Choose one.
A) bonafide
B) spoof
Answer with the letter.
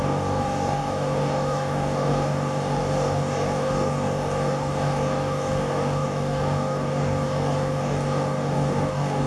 B